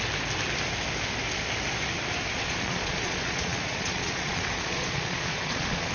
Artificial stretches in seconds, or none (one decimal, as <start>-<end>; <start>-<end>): 2.3-5.9